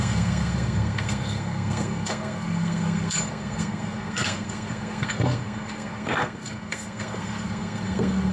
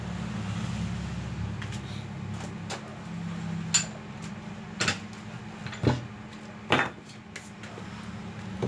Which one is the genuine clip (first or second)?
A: second